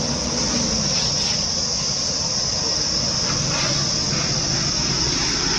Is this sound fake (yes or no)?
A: no